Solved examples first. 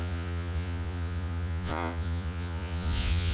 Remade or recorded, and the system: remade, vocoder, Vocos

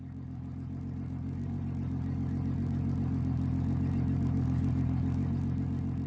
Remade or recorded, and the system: recorded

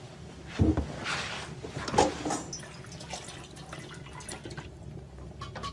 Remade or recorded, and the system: recorded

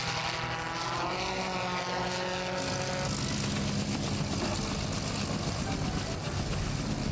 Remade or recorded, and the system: recorded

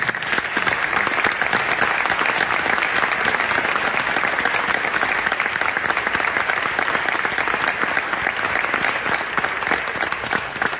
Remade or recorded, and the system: recorded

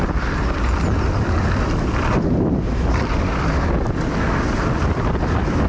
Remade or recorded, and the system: recorded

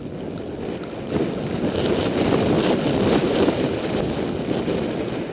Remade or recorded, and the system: recorded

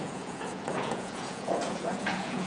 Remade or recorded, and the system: remade, vocoder, Vocos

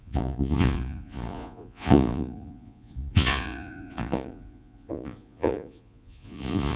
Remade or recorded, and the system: remade, vocoder, Vocos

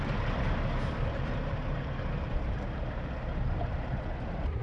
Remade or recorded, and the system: recorded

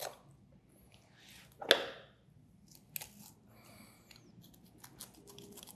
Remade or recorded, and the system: recorded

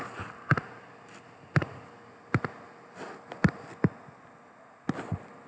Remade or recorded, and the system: recorded